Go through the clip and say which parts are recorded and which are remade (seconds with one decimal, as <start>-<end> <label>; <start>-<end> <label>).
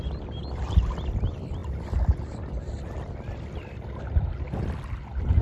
0.0-5.4 recorded